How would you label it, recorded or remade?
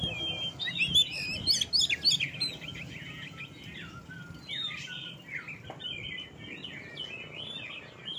recorded